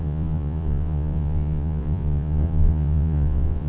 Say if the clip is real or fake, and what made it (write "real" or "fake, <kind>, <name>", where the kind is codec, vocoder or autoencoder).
fake, vocoder, Vocos